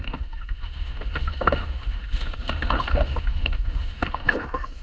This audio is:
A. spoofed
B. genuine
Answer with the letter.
A